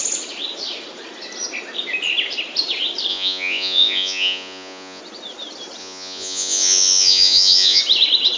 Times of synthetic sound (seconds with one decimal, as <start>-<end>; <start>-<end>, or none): 3.1-5.0; 5.8-7.8

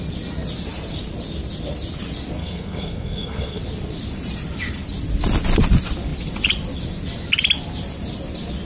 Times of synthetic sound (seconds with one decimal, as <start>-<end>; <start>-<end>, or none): 2.4-3.6

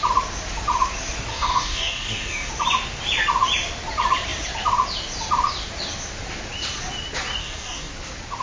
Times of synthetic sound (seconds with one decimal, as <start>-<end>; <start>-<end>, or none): 1.3-2.5; 7.4-7.9

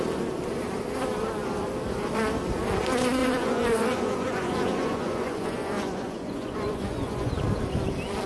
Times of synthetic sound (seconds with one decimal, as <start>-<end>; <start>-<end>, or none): 3.2-7.3

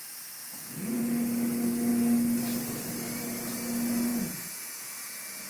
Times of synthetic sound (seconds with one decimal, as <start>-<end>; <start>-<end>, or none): 0.4-1.0; 4.1-5.5

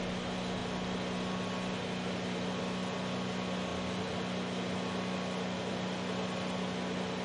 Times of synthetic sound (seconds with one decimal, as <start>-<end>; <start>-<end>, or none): 0.6-2.6